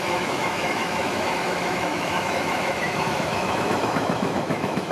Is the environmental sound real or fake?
fake